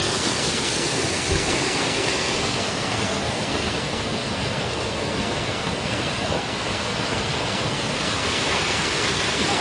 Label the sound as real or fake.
fake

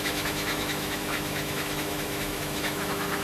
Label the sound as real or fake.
fake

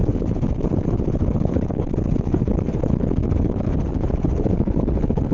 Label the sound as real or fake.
fake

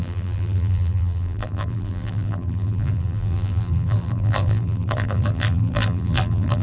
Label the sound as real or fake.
fake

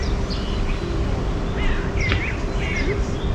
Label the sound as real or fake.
real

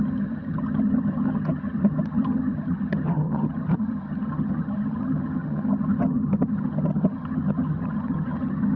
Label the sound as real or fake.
fake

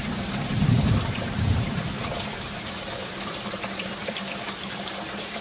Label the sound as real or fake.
fake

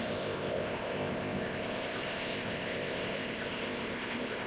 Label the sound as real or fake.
fake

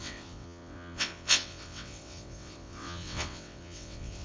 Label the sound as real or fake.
fake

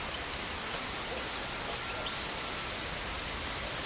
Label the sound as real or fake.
real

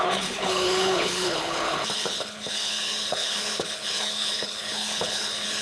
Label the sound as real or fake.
fake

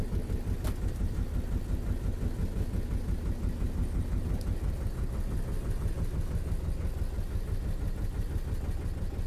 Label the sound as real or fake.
real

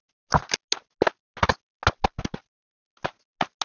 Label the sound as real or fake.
real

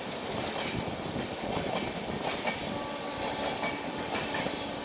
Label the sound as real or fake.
real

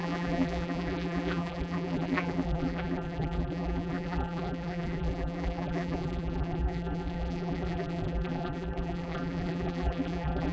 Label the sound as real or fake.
fake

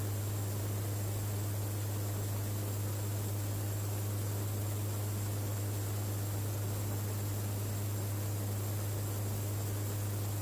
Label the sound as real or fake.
real